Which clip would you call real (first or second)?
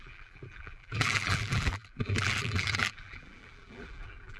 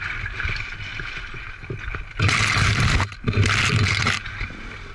second